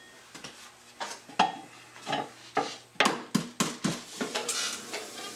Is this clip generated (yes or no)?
no